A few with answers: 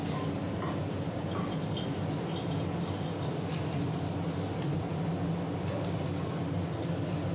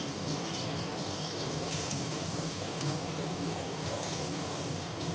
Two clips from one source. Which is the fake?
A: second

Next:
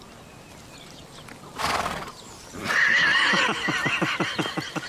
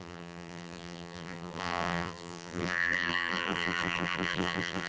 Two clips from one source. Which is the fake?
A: second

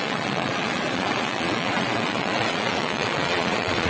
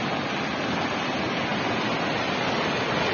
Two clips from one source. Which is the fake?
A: first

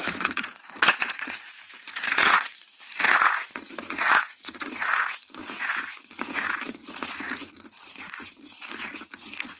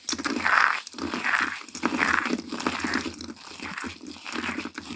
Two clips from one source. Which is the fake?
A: first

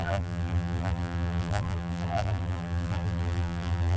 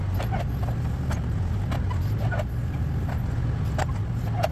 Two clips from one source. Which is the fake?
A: first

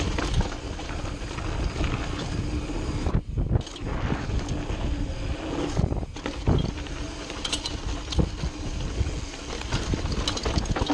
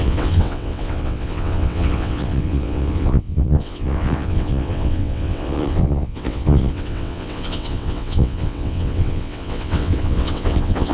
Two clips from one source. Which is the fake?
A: second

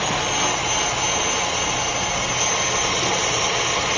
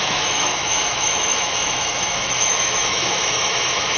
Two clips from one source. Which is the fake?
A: second